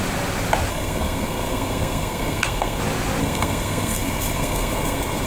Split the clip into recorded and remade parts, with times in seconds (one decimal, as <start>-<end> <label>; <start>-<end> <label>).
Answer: 0.0-0.7 recorded; 0.7-2.8 remade; 2.8-3.2 recorded; 3.2-5.3 remade